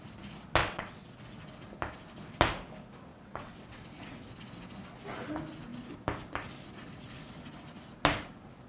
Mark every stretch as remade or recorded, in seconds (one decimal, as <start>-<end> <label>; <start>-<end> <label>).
0.0-0.6 recorded; 0.6-1.2 remade; 1.2-3.1 recorded; 3.1-3.8 remade; 3.8-8.7 recorded